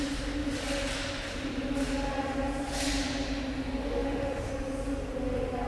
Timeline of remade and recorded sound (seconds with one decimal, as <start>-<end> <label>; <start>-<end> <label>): 0.0-3.8 recorded; 3.8-4.5 remade; 4.5-5.7 recorded